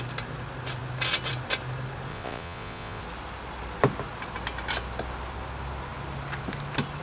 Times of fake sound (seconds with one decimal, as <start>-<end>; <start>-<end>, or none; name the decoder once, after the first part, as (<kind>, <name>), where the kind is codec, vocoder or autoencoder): 2.1-3.0 (vocoder, Vocos)